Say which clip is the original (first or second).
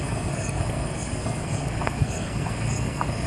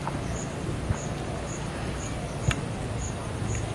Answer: second